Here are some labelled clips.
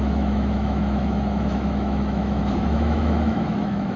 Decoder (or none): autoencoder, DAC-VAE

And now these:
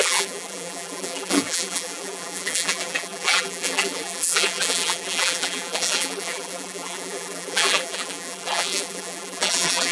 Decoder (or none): vocoder, BigVGAN v2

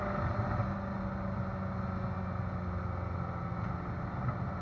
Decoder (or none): none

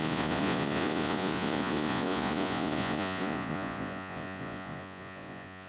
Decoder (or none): vocoder, Vocos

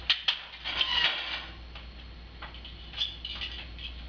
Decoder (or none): none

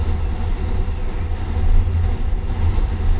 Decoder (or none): none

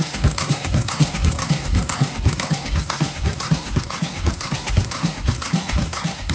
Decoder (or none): codec, SNAC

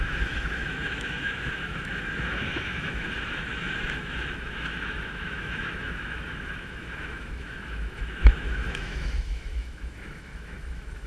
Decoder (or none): autoencoder, DAC-VAE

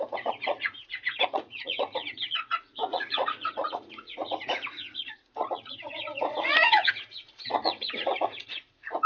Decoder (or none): vocoder, Vocos